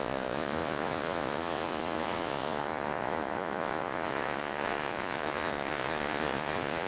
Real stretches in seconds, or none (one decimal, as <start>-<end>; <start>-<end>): none